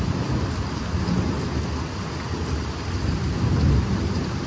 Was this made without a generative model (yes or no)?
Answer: yes